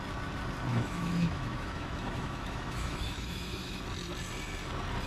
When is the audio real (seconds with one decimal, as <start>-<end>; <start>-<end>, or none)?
0.0-0.7; 3.8-5.1